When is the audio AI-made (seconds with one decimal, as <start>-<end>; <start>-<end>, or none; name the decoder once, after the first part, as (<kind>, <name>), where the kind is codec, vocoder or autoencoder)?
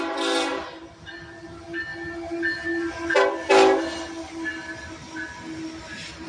none